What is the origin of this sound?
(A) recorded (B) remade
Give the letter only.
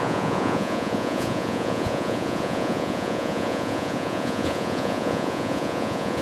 B